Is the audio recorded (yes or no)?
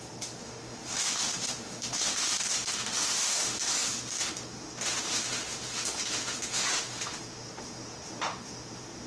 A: no